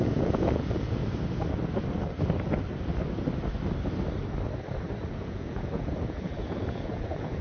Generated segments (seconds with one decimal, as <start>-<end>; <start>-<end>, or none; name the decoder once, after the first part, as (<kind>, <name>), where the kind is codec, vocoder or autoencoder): 0.0-1.0 (vocoder, Vocos); 5.1-7.4